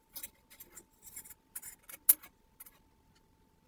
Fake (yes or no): no